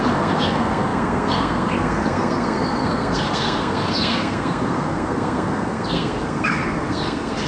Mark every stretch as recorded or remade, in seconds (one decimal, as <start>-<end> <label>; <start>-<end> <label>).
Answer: 0.0-7.5 remade